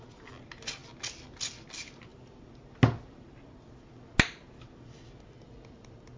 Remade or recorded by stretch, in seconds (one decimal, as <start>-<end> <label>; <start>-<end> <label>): 0.0-6.2 recorded